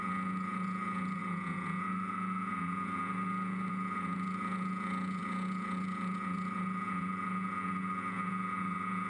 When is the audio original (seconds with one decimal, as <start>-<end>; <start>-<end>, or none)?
none